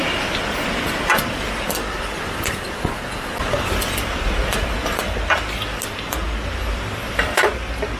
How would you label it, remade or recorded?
recorded